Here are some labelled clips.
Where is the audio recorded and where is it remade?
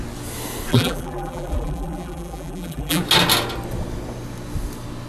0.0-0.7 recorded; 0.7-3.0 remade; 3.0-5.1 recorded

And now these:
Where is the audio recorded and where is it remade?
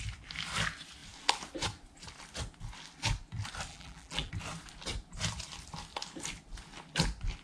0.0-3.7 recorded; 3.7-4.3 remade; 4.3-7.4 recorded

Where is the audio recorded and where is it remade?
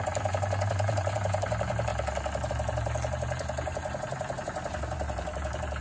0.0-1.9 remade; 1.9-2.5 recorded; 2.5-5.8 remade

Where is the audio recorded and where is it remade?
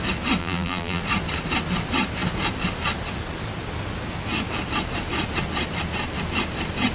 0.0-0.4 recorded; 0.4-1.0 remade; 1.0-6.9 recorded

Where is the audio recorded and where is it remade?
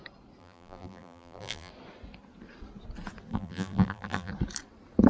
0.0-0.4 recorded; 0.4-1.7 remade; 1.7-3.3 recorded; 3.3-4.3 remade; 4.3-5.1 recorded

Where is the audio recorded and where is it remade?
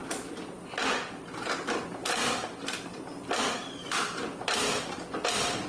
0.0-0.8 remade; 0.8-2.0 recorded; 2.0-4.4 remade; 4.4-5.7 recorded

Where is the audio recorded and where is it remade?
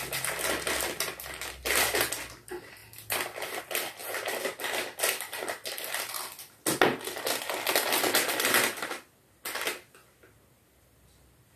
0.0-11.6 recorded